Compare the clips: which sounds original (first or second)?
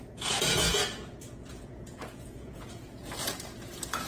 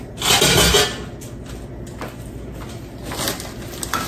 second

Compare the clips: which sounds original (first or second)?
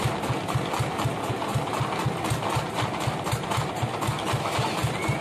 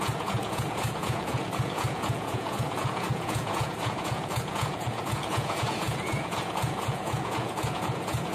first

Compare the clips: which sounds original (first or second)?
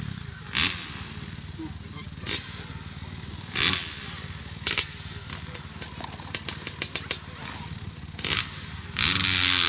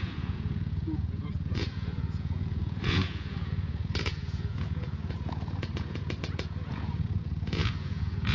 first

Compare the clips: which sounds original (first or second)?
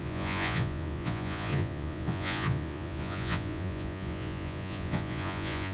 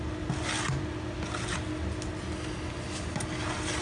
second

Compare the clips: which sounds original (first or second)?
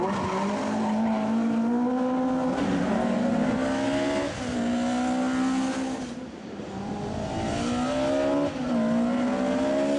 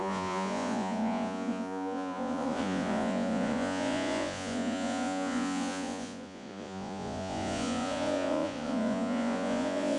first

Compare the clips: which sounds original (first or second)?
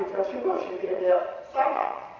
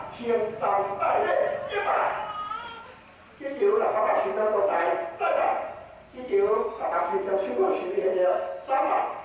second